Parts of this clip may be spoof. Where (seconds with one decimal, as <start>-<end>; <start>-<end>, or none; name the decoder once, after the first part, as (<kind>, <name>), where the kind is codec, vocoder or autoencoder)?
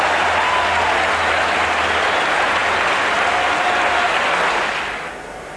none